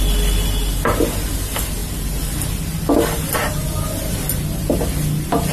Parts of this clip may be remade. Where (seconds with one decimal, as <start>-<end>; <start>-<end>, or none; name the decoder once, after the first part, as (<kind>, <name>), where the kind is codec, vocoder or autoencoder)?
none